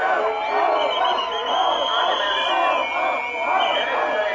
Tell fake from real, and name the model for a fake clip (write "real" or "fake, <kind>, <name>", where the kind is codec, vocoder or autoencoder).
real